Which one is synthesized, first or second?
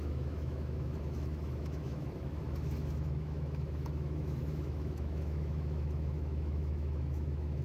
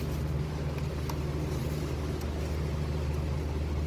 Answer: first